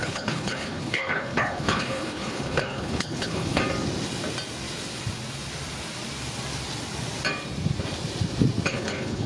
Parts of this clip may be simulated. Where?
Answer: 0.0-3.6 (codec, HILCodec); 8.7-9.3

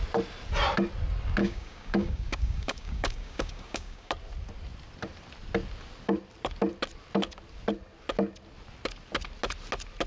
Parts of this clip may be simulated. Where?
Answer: 1.4-4.1 (codec, DAC)

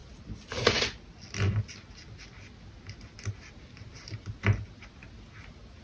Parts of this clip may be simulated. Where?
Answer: 3.5-5.0 (vocoder, BigVGAN v2)

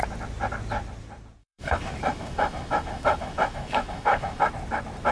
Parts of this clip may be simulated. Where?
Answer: 1.4-4.5 (autoencoder, DAC-VAE)